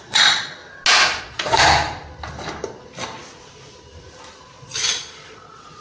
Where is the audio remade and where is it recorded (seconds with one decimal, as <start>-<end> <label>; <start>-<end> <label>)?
0.0-0.6 remade; 0.6-1.2 recorded; 1.2-1.6 remade; 1.6-5.1 recorded; 5.1-5.8 remade